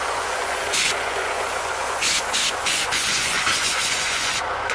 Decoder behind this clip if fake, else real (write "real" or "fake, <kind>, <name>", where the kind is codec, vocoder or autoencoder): fake, vocoder, Vocos